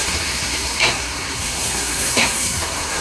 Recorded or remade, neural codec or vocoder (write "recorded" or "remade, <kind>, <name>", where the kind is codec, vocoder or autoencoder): remade, codec, SNAC